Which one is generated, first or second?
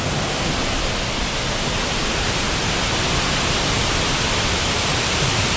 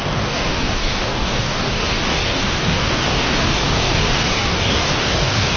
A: second